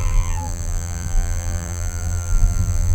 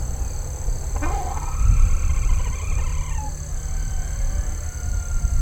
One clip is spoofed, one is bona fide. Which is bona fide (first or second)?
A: second